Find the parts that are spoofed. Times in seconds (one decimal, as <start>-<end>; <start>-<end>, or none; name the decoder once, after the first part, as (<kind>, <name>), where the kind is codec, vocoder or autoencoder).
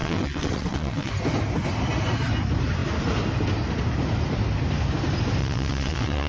0.0-1.1 (vocoder, WaveNeXt); 5.4-6.3